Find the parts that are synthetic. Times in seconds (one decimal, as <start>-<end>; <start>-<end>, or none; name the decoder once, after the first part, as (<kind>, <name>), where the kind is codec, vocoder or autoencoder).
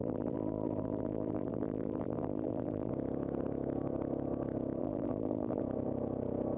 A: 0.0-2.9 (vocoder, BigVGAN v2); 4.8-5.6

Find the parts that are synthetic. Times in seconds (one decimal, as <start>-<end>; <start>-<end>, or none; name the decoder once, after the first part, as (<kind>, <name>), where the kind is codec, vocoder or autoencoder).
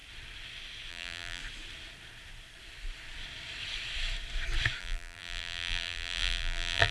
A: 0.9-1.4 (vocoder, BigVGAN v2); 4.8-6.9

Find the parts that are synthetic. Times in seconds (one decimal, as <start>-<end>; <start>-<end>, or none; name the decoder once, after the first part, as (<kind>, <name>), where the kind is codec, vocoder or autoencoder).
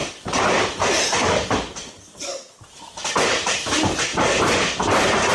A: none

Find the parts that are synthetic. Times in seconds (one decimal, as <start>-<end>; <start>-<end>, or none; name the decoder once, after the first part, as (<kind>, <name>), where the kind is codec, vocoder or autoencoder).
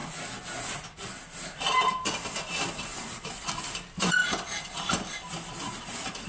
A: 2.9-3.5 (vocoder, BigVGAN v2); 4.2-5.3